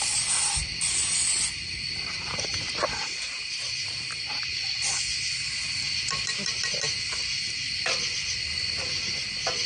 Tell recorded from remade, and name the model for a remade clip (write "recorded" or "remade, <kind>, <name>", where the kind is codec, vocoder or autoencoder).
recorded